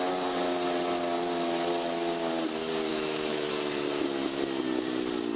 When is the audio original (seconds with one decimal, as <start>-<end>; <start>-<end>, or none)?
0.0-2.9; 3.5-5.4